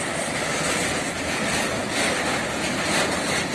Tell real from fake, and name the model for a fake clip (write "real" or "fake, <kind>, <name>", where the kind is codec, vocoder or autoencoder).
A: real